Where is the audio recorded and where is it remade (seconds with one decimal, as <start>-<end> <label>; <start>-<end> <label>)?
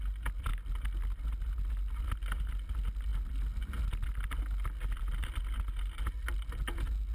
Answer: 0.0-7.1 recorded